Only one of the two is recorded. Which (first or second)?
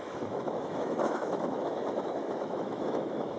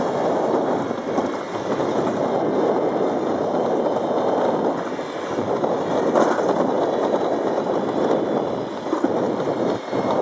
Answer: second